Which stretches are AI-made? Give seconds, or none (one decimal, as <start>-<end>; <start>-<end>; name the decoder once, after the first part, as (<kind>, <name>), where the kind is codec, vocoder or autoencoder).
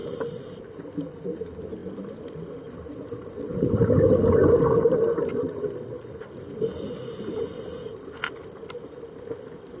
none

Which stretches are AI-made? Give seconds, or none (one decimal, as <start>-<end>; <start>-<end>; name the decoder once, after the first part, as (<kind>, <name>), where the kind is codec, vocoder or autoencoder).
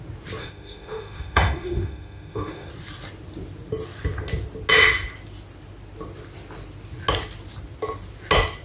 0.4-2.7 (autoencoder, DAC-VAE)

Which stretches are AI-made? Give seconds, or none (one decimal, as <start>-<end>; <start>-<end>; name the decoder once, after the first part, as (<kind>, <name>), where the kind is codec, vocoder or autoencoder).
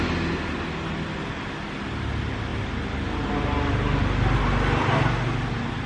none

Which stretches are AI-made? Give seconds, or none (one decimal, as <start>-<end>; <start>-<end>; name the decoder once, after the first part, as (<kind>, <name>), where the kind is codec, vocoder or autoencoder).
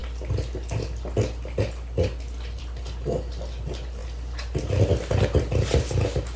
none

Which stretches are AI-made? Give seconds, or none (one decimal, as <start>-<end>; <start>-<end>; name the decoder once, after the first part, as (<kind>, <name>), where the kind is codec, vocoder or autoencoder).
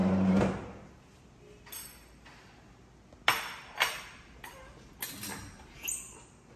none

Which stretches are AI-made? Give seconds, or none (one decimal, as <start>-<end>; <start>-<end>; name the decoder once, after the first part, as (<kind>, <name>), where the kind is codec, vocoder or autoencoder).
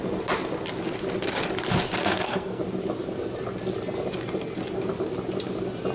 2.0-2.6 (codec, SNAC)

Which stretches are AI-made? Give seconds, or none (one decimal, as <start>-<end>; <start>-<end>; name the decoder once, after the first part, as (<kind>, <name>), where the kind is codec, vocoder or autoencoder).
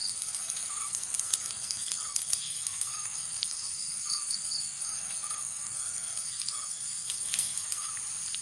0.0-7.9 (codec, SNAC)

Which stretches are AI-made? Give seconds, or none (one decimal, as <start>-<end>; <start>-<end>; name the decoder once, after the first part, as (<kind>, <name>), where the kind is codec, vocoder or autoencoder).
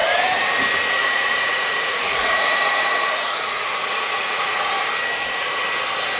1.0-4.7 (vocoder, Vocos)